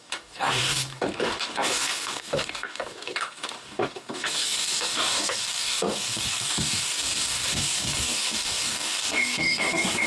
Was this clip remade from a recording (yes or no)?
yes